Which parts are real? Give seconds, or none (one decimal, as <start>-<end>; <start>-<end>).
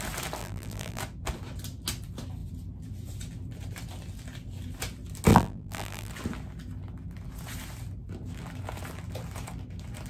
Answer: 0.0-0.4; 1.0-5.3; 6.1-10.1